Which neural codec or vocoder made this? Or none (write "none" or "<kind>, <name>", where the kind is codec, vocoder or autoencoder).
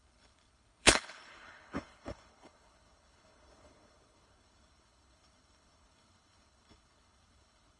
codec, HILCodec